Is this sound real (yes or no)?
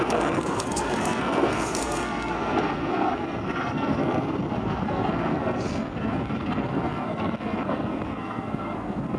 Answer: no